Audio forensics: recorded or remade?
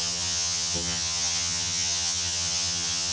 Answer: remade